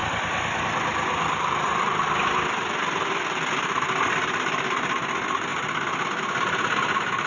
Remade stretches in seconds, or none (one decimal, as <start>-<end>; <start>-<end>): none